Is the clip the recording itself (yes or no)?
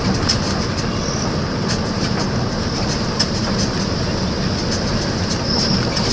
yes